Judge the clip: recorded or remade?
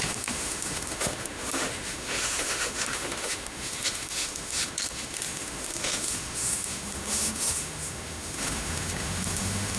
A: remade